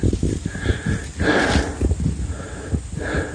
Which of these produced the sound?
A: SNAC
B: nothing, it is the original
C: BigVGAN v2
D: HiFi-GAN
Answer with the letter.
B